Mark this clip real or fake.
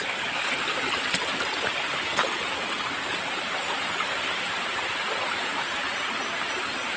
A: fake